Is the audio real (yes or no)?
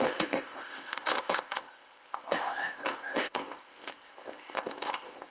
no